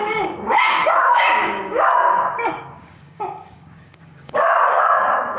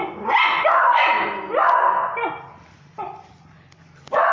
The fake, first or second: first